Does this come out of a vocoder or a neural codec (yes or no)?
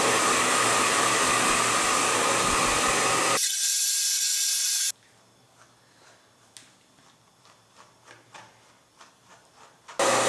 no